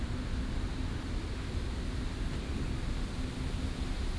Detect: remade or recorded recorded